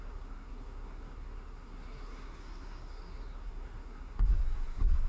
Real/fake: fake